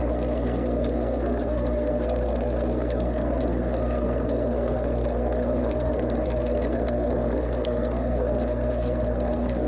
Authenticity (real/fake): fake